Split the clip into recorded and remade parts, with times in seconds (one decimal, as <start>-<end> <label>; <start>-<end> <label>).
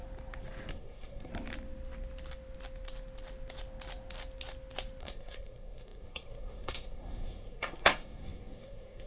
0.0-0.7 recorded; 0.7-1.3 remade; 1.3-5.0 recorded; 5.0-9.1 remade